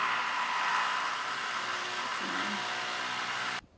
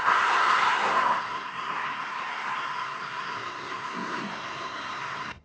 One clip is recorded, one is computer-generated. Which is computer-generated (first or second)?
second